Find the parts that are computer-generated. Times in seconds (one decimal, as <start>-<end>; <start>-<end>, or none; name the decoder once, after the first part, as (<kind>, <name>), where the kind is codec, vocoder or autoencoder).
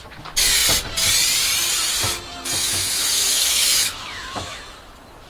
2.6-4.6 (autoencoder, DAC-VAE)